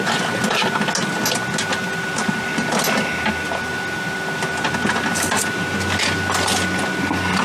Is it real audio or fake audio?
real